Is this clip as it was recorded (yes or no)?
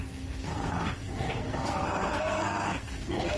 no